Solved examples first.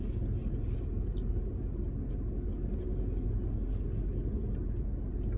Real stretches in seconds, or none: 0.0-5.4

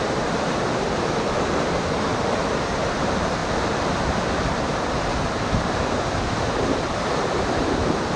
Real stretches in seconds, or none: 2.1-2.9

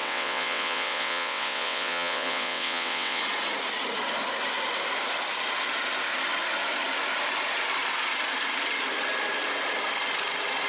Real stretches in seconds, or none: 3.2-10.7

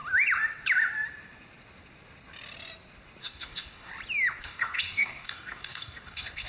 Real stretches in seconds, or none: 0.0-3.2; 3.9-4.4

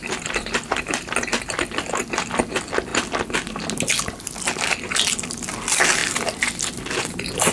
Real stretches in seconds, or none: 1.2-6.0